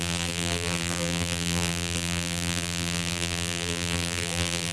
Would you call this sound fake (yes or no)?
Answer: yes